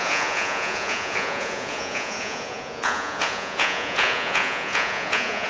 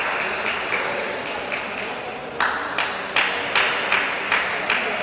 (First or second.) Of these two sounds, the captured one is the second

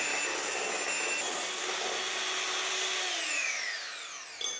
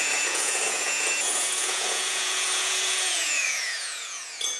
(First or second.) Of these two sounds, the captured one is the first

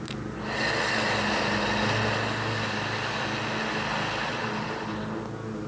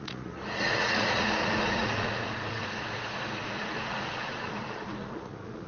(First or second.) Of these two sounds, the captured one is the first